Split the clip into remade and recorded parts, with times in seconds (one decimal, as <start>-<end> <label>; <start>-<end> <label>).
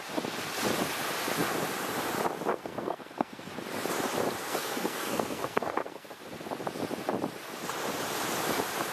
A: 0.0-2.5 recorded; 2.5-3.5 remade; 3.5-4.4 recorded; 4.4-6.2 remade; 6.2-8.9 recorded